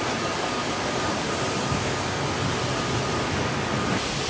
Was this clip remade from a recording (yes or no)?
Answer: no